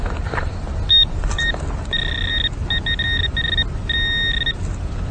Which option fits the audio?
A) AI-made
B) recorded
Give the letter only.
B